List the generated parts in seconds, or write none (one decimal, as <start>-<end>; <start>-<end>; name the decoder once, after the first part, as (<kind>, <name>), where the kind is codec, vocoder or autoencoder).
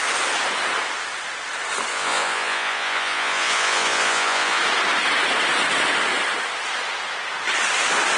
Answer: 1.9-4.6 (vocoder, Vocos)